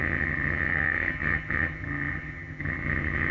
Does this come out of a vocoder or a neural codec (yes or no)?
yes